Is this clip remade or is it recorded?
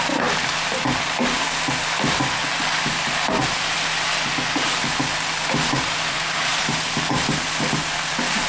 recorded